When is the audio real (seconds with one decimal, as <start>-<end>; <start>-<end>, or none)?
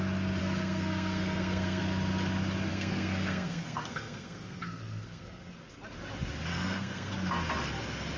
0.0-0.4; 1.8-2.7; 5.5-6.5; 7.1-8.2